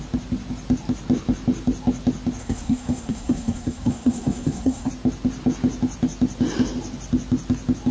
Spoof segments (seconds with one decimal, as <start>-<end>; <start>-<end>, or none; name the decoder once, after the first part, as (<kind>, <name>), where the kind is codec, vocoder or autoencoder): 2.4-4.9 (codec, SNAC)